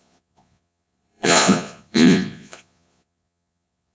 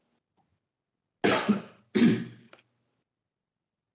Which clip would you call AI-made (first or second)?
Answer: first